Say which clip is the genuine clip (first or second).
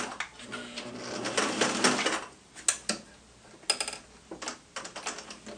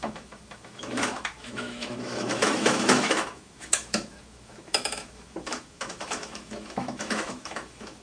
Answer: first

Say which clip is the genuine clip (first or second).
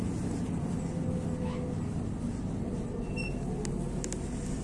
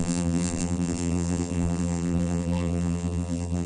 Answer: first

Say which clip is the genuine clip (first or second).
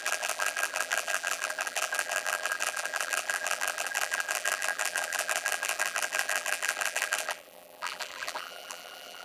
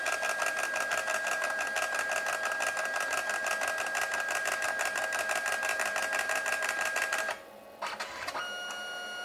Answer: second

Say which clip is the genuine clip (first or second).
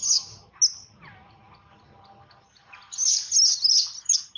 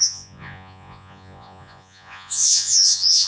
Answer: first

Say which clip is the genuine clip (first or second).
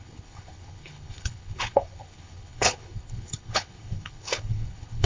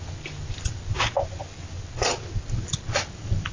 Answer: second